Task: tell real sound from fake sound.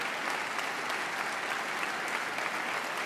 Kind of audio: real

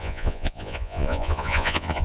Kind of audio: fake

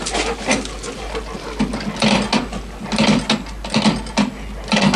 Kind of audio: real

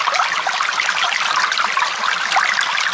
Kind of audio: real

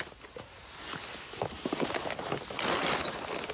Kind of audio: fake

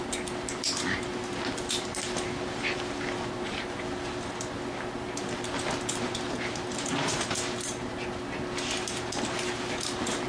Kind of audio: real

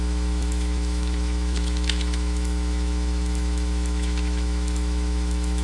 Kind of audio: fake